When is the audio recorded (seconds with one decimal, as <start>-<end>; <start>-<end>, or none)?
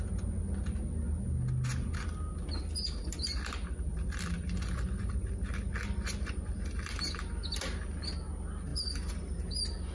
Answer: 0.0-3.9; 5.3-8.7; 9.4-9.9